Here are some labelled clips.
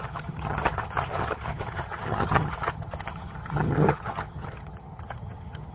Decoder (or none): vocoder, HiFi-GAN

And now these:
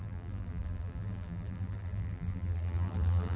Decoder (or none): vocoder, BigVGAN v2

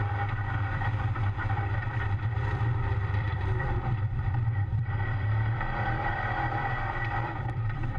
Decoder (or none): vocoder, BigVGAN v2